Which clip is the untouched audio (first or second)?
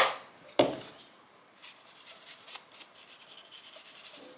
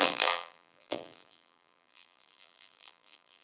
first